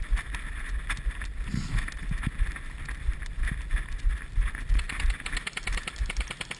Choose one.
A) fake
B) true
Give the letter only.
B